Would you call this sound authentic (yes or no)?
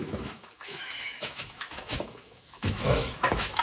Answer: no